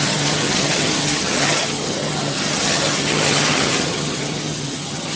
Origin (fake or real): fake